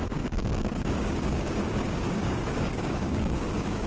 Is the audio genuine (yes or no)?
no